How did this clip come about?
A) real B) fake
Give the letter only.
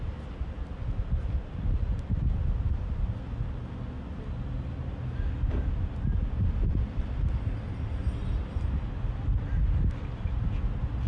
A